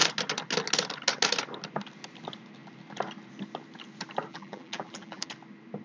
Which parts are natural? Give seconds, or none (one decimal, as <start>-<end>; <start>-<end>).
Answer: 0.0-4.3; 5.3-5.8